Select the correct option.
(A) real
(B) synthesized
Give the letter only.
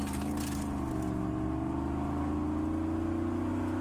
A